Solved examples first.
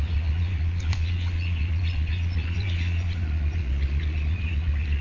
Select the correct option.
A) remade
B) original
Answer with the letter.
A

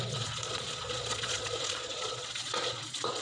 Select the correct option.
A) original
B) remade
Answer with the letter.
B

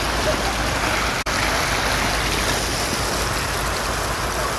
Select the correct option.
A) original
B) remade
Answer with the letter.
A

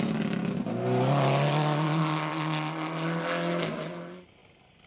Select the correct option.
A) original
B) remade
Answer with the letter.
A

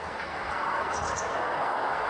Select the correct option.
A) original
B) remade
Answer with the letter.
B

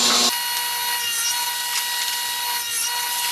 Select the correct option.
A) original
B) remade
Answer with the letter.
A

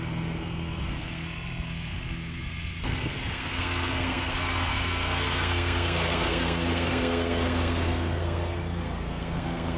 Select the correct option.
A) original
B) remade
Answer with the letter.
B